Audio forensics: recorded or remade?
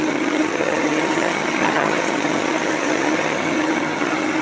remade